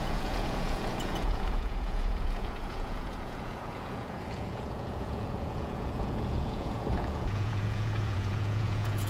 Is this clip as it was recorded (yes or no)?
no